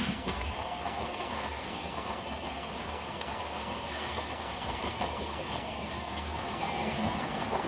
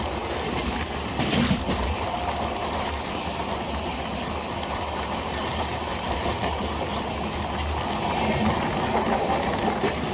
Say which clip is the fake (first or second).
first